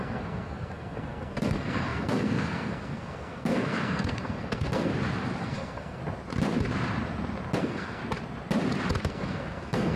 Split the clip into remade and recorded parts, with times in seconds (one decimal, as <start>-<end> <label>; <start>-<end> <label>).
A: 0.0-4.9 remade; 4.9-5.4 recorded; 5.4-6.0 remade; 6.0-7.6 recorded; 7.6-8.0 remade; 8.0-9.0 recorded; 9.0-10.0 remade